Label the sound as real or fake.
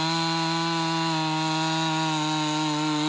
real